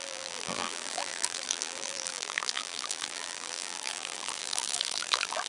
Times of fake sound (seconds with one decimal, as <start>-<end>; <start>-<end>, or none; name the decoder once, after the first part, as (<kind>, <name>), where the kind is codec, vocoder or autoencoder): 0.0-5.5 (vocoder, BigVGAN v2)